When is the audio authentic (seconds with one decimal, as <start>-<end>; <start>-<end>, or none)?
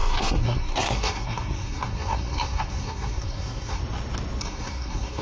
3.8-4.4